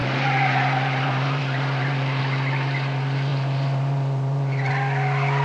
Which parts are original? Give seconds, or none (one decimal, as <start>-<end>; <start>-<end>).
2.2-3.3; 4.7-5.4